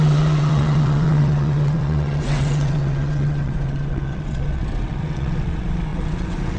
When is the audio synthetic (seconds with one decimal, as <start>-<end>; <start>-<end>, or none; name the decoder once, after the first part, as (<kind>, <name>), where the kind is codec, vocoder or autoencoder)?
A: 0.0-6.6 (vocoder, WaveNeXt)